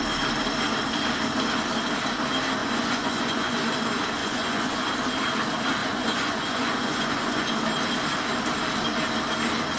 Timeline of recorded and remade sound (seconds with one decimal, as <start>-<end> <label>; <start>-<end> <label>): 0.0-2.6 recorded; 2.6-3.6 remade; 3.6-4.2 recorded; 4.2-4.9 remade; 4.9-5.8 recorded; 5.8-7.5 remade; 7.5-9.8 recorded